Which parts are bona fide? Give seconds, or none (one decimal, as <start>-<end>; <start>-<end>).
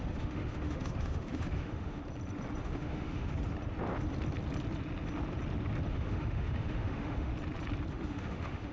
2.0-2.6; 3.3-5.9; 7.3-7.9